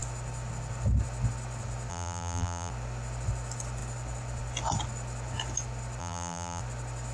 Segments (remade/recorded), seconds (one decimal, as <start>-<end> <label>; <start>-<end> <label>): 0.0-1.9 recorded; 1.9-2.7 remade; 2.7-6.0 recorded; 6.0-6.6 remade; 6.6-7.1 recorded